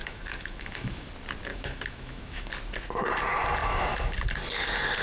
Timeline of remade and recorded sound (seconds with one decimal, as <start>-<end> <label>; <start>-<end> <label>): 0.0-1.1 remade; 1.1-1.5 recorded; 1.5-2.5 remade; 2.5-3.6 recorded; 3.6-4.1 remade; 4.1-5.0 recorded